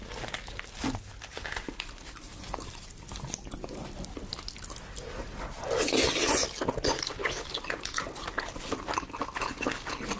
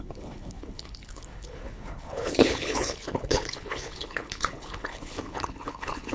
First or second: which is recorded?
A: first